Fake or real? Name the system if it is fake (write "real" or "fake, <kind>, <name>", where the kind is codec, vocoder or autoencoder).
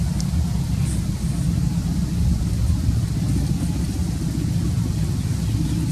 real